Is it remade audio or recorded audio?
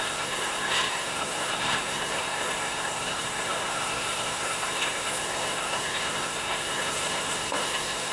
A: remade